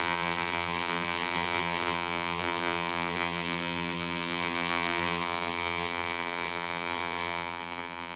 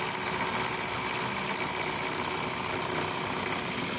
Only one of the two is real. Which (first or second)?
second